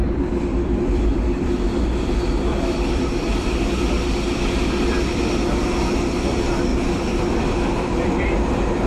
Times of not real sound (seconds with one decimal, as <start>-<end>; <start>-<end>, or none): 0.0-3.6; 6.7-8.5